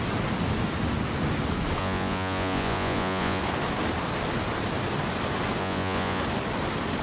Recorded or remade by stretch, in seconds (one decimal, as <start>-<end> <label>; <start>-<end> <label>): 0.0-1.8 recorded; 1.8-3.4 remade; 3.4-5.6 recorded; 5.6-6.2 remade; 6.2-7.0 recorded